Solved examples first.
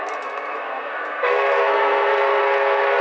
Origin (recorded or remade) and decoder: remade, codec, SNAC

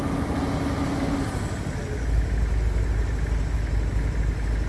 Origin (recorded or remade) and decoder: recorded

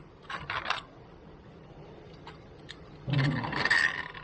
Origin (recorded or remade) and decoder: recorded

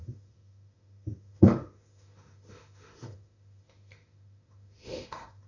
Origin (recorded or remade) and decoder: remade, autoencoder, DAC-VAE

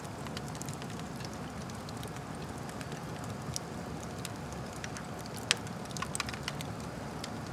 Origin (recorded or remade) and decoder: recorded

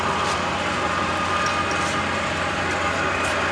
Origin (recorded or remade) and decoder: recorded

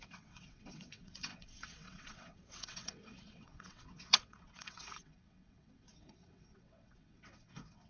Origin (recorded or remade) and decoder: remade, vocoder, WaveNeXt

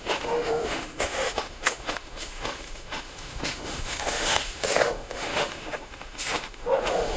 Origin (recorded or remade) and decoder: remade, autoencoder, DAC-VAE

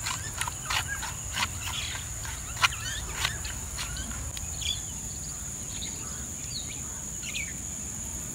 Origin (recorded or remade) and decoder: remade, vocoder, BigVGAN v2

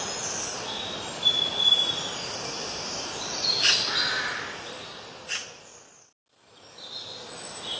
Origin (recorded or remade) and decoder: recorded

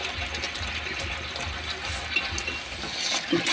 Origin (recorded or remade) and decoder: recorded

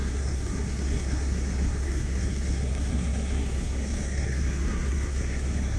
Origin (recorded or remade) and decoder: remade, codec, SNAC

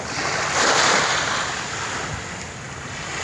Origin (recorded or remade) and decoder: recorded